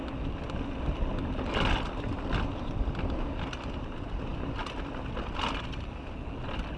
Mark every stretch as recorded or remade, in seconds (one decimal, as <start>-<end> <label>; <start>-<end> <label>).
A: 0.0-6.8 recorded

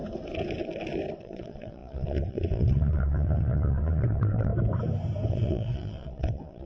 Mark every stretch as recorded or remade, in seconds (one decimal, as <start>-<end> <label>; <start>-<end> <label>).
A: 0.0-1.2 recorded; 1.2-4.5 remade; 4.5-5.3 recorded; 5.3-6.7 remade

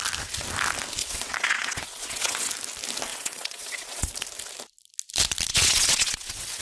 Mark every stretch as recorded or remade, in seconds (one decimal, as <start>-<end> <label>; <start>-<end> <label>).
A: 0.0-1.0 recorded; 1.0-2.5 remade; 2.5-3.1 recorded; 3.1-4.1 remade; 4.1-5.5 recorded; 5.5-6.6 remade

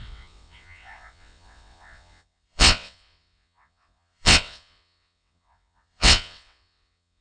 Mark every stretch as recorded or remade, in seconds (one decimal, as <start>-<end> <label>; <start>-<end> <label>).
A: 0.0-7.2 remade

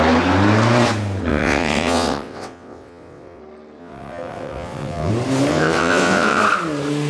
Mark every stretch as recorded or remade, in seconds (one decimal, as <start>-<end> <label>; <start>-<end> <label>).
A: 0.0-1.3 recorded; 1.3-3.4 remade; 3.4-3.8 recorded; 3.8-5.1 remade; 5.1-5.5 recorded; 5.5-6.4 remade; 6.4-7.1 recorded

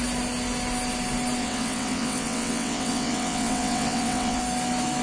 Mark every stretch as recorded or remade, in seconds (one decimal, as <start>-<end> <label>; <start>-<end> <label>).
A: 0.0-1.4 recorded; 1.4-4.4 remade; 4.4-5.0 recorded

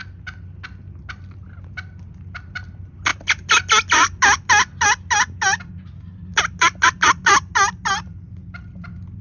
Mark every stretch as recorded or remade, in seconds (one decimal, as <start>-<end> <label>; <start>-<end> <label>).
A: 0.0-9.2 recorded

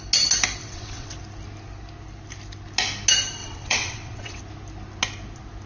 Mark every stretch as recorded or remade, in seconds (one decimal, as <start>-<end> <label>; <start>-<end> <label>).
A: 0.0-0.6 recorded; 0.6-1.1 remade; 1.1-3.4 recorded; 3.4-4.4 remade; 4.4-5.7 recorded